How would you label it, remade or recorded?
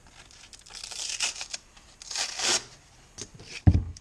recorded